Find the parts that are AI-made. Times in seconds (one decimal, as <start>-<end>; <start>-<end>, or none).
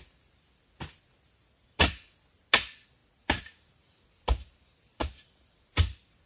none